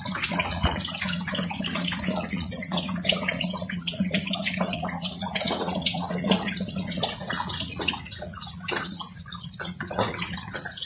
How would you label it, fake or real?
fake